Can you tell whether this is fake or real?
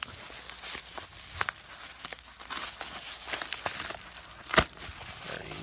real